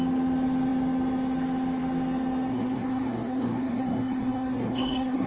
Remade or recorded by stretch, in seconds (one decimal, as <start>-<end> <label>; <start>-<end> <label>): 0.0-2.5 recorded; 2.5-5.3 remade

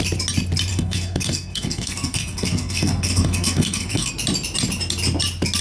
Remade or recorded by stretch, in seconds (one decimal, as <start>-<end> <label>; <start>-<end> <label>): 0.0-0.7 recorded; 0.7-4.1 remade; 4.1-5.6 recorded

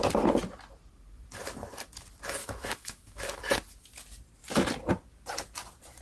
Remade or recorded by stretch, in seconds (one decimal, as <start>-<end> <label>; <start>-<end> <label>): 0.0-2.4 recorded; 2.4-3.4 remade; 3.4-6.0 recorded

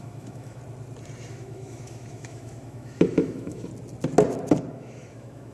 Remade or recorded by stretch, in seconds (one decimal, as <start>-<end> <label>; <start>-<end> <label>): 0.0-0.6 remade; 0.6-1.3 recorded; 1.3-3.7 remade; 3.7-4.7 recorded; 4.7-5.5 remade

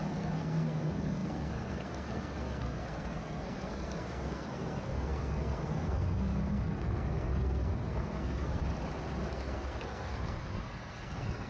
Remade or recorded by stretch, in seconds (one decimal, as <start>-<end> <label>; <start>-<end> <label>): 0.0-8.6 remade; 8.6-9.3 recorded; 9.3-11.5 remade

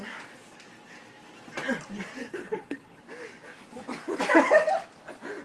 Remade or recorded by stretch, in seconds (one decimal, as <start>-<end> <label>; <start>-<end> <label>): 0.0-2.3 recorded; 2.3-3.0 remade; 3.0-5.4 recorded

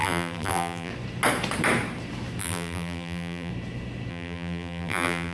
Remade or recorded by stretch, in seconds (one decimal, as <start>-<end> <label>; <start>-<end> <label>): 0.0-0.9 remade; 0.9-2.4 recorded; 2.4-3.5 remade; 3.5-4.1 recorded; 4.1-5.3 remade

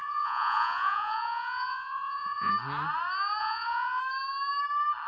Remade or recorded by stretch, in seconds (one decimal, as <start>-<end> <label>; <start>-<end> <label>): 0.0-2.5 remade; 2.5-3.4 recorded; 3.4-4.0 remade; 4.0-5.1 recorded